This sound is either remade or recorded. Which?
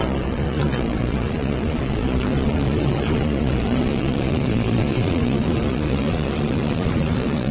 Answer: remade